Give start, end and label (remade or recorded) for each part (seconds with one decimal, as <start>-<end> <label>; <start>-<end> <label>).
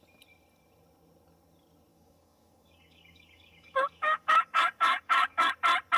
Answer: 0.0-1.9 recorded; 1.9-5.5 remade; 5.5-6.0 recorded